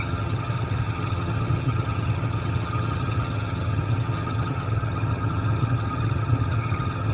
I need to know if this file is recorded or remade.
remade